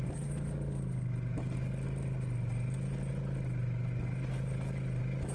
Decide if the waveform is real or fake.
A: real